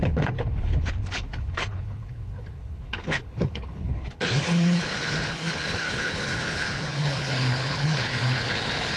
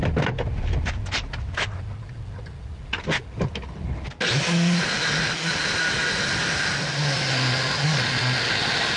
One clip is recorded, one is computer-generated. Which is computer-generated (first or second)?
first